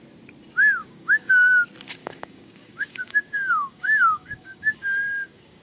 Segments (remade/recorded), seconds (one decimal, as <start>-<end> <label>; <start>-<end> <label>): 0.0-0.8 recorded; 0.8-1.3 remade; 1.3-2.0 recorded; 2.0-5.6 remade